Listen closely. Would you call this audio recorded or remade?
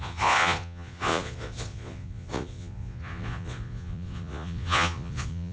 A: remade